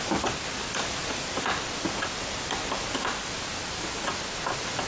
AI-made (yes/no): no